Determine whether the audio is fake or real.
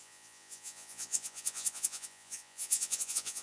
fake